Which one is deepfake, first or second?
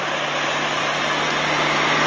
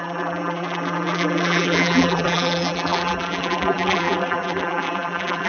second